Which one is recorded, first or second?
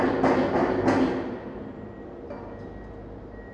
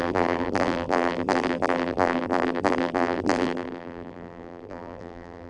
first